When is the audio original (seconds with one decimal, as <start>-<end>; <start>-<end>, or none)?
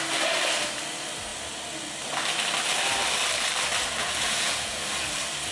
0.0-4.0; 4.8-5.5